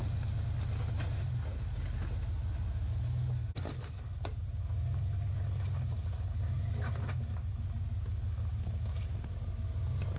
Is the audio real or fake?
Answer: real